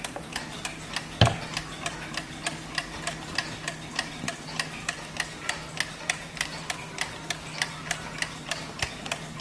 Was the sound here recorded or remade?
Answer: recorded